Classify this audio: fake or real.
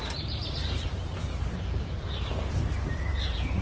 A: fake